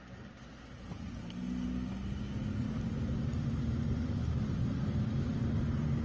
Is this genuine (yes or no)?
yes